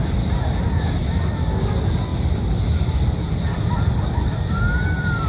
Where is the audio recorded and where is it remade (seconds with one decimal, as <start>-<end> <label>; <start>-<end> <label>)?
0.0-2.1 recorded; 2.1-5.3 remade